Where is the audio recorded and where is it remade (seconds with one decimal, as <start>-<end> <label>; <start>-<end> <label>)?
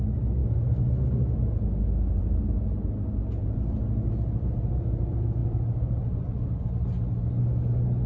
0.0-8.1 recorded